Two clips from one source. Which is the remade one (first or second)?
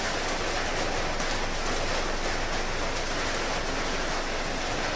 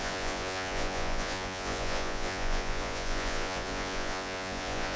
second